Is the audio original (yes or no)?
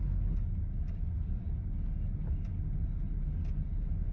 yes